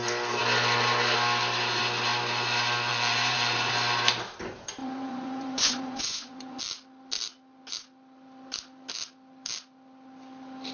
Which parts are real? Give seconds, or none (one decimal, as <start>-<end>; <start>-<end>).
0.0-2.9; 3.7-4.8; 6.6-10.7

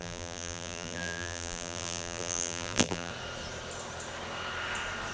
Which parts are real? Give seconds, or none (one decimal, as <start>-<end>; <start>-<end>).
3.1-5.1

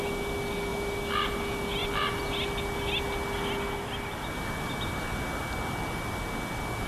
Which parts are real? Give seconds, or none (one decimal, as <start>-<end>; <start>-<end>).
0.0-6.9

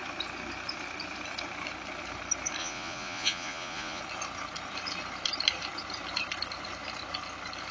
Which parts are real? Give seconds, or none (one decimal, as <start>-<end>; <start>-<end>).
0.0-2.6; 4.0-7.7

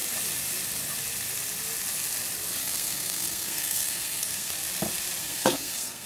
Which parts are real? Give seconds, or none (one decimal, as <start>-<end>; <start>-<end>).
0.0-2.6; 4.5-5.2

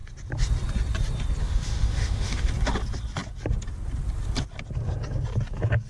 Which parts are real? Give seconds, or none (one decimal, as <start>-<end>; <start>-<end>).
0.0-1.4; 2.5-5.9